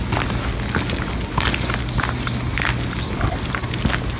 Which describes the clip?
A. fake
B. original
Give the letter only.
B